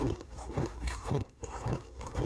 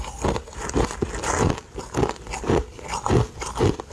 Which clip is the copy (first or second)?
first